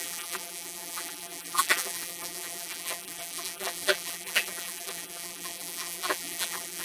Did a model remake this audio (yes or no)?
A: yes